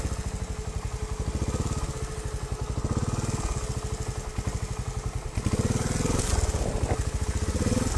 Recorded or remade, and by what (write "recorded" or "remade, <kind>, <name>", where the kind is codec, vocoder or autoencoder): recorded